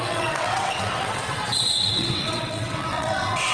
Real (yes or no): no